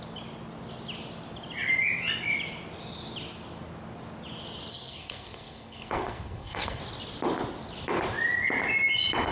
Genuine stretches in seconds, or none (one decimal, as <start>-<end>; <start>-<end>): 0.0-4.7; 6.8-9.3